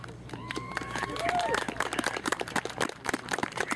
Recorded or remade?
remade